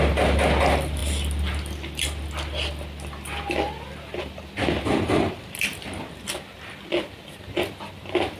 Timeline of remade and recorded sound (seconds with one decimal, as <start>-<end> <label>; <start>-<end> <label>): 0.0-8.4 recorded